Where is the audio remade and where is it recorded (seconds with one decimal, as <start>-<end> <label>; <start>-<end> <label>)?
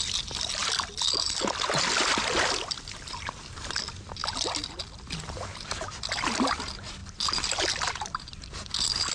0.0-9.1 recorded